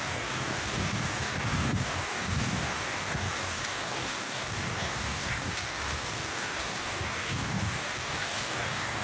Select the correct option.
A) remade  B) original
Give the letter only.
A